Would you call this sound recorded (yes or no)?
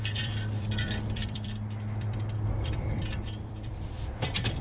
no